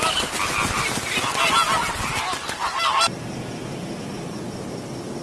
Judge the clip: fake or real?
real